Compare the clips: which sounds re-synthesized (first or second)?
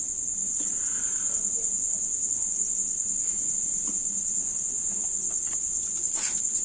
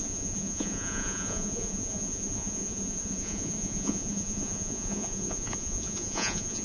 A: second